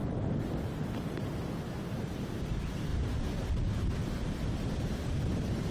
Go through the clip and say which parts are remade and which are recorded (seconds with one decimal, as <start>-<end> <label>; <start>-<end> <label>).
0.0-5.7 recorded